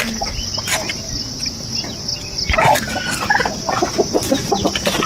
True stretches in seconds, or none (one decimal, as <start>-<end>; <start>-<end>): 0.0-5.1